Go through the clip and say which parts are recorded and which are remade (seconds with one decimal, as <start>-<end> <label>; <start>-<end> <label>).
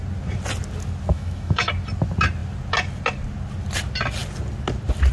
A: 0.0-1.1 recorded; 1.1-1.7 remade; 1.7-5.1 recorded